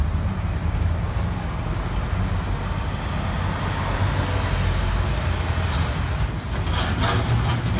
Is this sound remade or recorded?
recorded